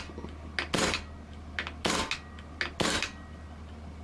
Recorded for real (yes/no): yes